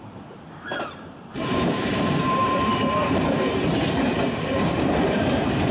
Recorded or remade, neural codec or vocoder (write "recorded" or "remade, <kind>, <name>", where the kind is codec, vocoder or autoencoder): remade, vocoder, BigVGAN v2